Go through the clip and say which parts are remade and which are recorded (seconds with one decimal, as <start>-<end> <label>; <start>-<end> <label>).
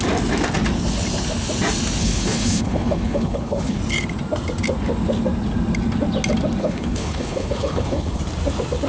0.0-2.0 recorded; 2.0-3.8 remade; 3.8-6.6 recorded; 6.6-8.2 remade; 8.2-8.9 recorded